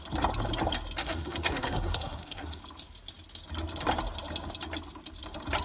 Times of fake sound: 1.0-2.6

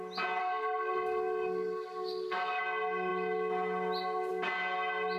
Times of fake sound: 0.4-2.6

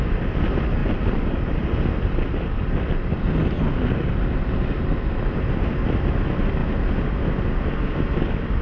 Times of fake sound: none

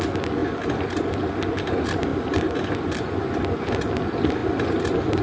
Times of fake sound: none

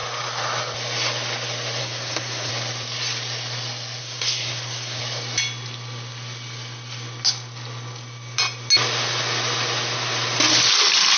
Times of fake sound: 1.8-2.5; 4.0-5.0